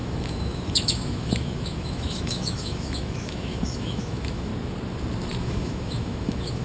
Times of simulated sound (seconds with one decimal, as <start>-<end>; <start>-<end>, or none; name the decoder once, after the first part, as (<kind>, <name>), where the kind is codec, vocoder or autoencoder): 0.0-4.5 (autoencoder, DAC-VAE); 5.4-6.6